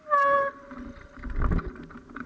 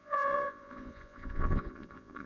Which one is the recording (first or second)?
first